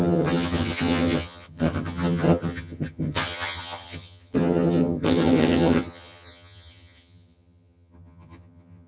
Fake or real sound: fake